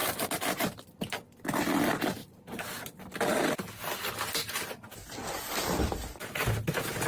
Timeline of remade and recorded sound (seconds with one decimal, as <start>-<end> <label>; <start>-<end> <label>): 0.0-0.8 remade; 0.8-7.1 recorded